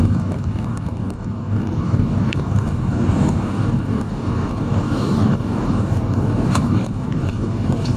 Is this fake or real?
fake